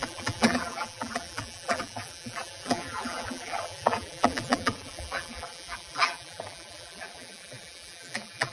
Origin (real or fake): fake